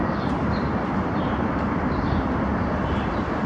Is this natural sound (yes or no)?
yes